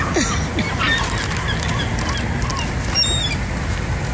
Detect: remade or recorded recorded